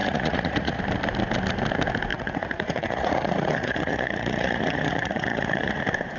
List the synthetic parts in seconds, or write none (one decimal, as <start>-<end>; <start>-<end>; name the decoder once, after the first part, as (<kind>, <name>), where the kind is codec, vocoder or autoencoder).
0.0-0.8 (vocoder, Vocos); 2.1-5.8